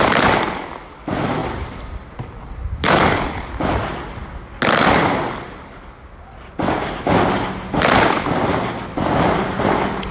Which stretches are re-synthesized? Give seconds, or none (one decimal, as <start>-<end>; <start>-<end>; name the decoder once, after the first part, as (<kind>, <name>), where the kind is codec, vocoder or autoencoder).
1.4-3.6 (vocoder, BigVGAN v2)